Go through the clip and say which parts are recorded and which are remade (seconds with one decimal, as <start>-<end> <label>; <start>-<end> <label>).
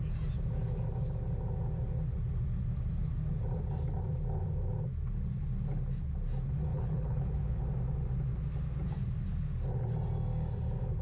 0.0-6.7 recorded; 6.7-7.6 remade; 7.6-11.0 recorded